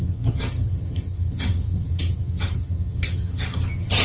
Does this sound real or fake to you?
fake